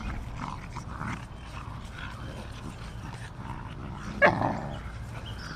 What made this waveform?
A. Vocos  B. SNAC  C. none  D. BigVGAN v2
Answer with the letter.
C